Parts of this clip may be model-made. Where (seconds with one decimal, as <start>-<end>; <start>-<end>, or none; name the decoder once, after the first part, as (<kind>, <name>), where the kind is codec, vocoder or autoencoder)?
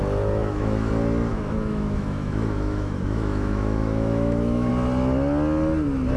0.4-0.9 (autoencoder, DAC-VAE); 1.3-4.7